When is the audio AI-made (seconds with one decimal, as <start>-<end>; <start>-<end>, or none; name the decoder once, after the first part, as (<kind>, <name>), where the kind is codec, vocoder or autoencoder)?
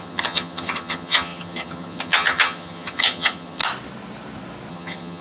0.0-3.6 (vocoder, HiFi-GAN); 4.7-5.2